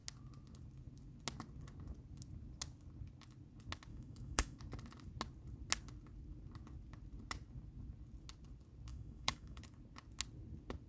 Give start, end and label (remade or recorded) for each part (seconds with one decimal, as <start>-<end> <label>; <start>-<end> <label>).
0.0-3.9 recorded; 3.9-4.6 remade; 4.6-8.9 recorded; 8.9-9.6 remade; 9.6-10.9 recorded